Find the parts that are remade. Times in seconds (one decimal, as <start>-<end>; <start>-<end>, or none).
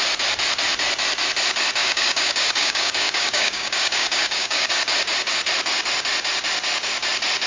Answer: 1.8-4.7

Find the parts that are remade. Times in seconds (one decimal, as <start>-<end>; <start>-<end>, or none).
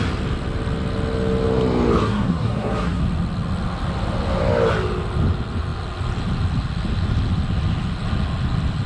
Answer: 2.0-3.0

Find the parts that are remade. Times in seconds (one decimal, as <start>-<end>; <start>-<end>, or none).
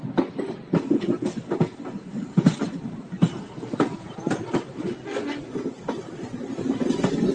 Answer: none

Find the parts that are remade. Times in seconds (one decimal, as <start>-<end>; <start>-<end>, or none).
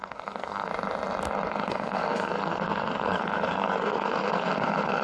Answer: 0.0-0.7; 1.5-5.0